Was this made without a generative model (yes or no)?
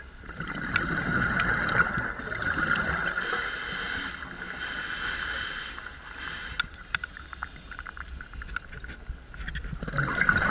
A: yes